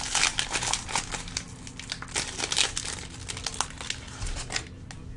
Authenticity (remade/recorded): recorded